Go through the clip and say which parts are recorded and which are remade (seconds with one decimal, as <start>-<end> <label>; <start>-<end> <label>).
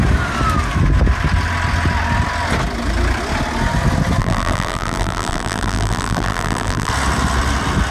0.0-4.2 recorded; 4.2-6.9 remade; 6.9-7.9 recorded